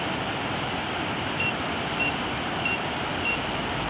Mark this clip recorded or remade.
remade